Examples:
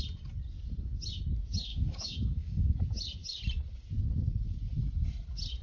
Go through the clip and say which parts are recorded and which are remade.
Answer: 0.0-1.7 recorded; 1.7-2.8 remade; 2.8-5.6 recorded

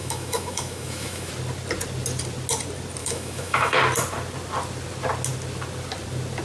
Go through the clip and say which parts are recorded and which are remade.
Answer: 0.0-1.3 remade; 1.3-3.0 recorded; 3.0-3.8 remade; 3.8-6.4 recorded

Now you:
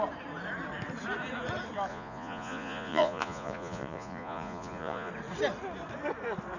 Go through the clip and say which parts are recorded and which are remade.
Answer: 0.0-1.9 recorded; 1.9-5.1 remade; 5.1-6.6 recorded

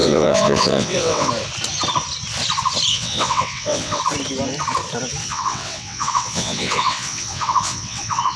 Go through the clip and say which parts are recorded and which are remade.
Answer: 0.0-1.3 remade; 1.3-2.9 recorded; 2.9-4.0 remade; 4.0-5.2 recorded; 5.2-8.4 remade